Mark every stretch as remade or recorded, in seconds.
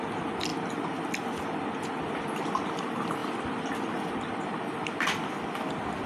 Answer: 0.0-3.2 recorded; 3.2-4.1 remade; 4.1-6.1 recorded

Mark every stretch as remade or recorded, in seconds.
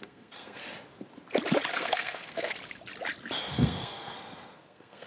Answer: 0.0-0.6 remade; 0.6-1.7 recorded; 1.7-2.5 remade; 2.5-3.4 recorded; 3.4-5.1 remade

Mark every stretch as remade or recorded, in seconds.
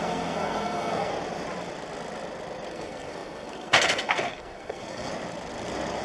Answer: 0.0-1.1 remade; 1.1-2.7 recorded; 2.7-5.1 remade; 5.1-6.0 recorded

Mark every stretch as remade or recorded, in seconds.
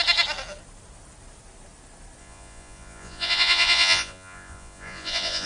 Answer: 0.0-2.2 recorded; 2.2-5.5 remade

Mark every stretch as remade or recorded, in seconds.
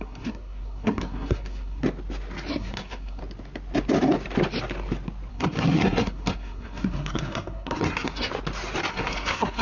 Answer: 0.0-1.8 remade; 1.8-2.5 recorded; 2.5-3.2 remade; 3.2-5.3 recorded; 5.3-8.3 remade; 8.3-8.9 recorded; 8.9-9.6 remade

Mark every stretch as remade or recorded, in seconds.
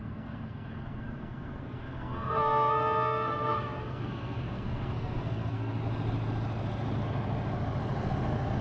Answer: 0.0-5.8 remade; 5.8-8.6 recorded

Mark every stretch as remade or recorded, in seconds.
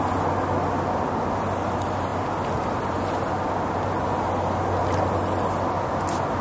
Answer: 0.0-6.4 recorded